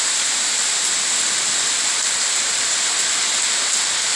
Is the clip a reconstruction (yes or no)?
no